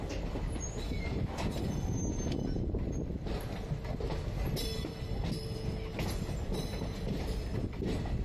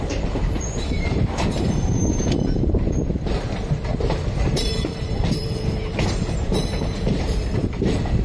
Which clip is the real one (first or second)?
first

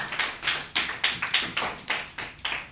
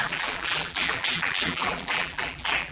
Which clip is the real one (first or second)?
first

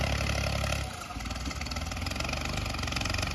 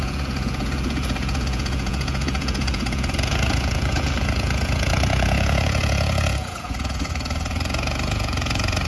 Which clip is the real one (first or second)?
first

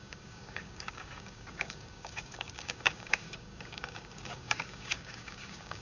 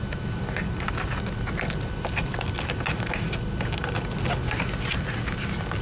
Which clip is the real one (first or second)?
second